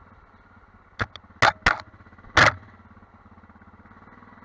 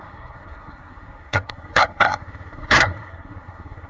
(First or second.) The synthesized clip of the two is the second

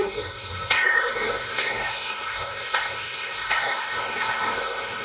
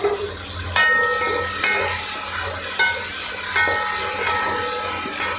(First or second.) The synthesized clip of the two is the first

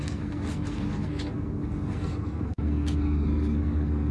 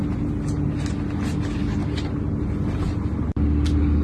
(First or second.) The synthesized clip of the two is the first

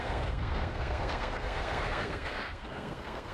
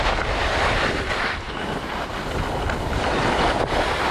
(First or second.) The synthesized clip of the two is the first